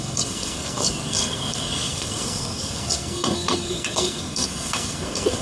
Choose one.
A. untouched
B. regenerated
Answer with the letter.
B